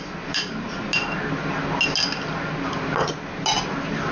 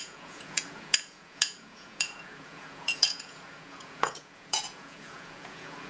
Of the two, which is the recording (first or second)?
first